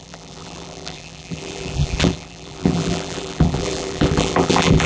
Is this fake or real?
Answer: fake